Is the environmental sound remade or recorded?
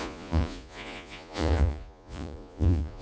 remade